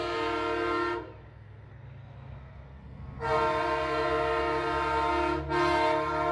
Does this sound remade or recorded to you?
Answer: recorded